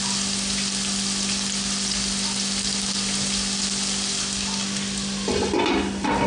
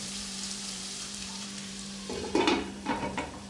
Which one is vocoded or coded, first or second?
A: second